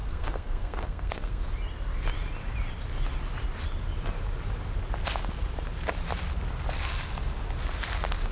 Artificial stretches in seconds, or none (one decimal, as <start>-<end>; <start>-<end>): 0.0-1.4